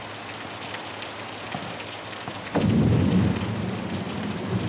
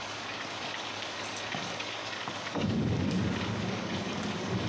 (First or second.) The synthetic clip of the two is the second